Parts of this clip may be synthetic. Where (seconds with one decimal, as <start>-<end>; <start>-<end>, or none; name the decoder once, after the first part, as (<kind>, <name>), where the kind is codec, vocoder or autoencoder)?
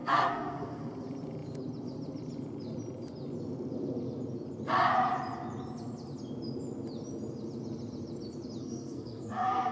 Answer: 0.0-0.9 (codec, SNAC); 8.6-9.7